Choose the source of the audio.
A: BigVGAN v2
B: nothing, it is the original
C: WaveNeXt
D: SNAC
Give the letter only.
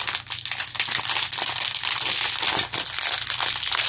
B